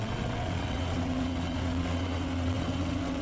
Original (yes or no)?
no